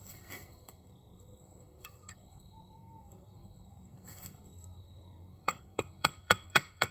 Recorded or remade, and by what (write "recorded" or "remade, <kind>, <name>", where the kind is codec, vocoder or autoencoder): remade, codec, SNAC